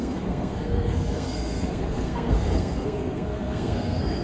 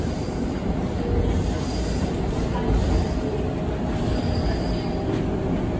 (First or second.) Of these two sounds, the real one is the second